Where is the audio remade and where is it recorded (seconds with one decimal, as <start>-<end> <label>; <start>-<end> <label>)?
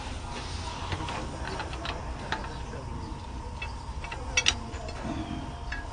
0.0-5.9 recorded